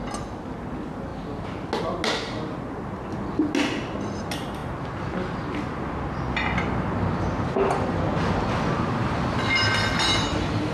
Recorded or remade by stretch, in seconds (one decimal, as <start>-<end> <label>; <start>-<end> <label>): 0.0-10.7 recorded